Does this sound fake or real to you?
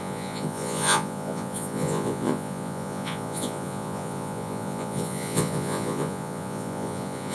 fake